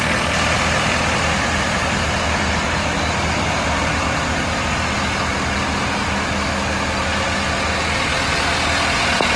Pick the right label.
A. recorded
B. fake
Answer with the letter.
A